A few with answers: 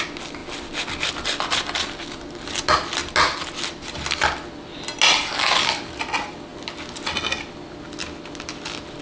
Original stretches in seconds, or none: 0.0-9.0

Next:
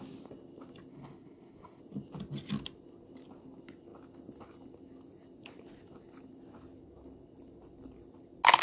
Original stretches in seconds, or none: 0.0-0.9; 1.8-8.6